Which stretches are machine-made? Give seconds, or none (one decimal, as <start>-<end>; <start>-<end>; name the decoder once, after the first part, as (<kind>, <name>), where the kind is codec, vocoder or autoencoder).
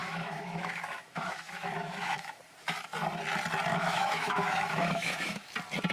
0.0-2.4 (autoencoder, DAC-VAE); 3.7-5.5